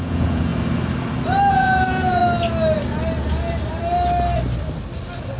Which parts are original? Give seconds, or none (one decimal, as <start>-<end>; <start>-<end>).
0.5-1.5; 2.2-5.4